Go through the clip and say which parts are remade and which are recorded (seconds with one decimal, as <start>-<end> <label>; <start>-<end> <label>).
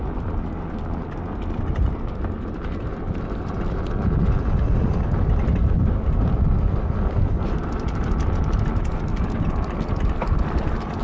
0.0-11.0 recorded